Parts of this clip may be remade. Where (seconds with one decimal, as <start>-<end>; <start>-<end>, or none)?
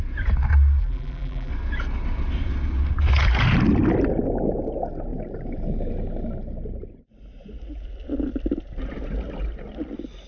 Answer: 0.8-1.5